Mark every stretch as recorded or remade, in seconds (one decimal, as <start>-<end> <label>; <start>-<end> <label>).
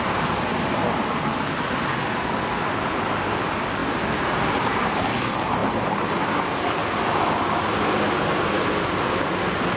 0.0-9.8 recorded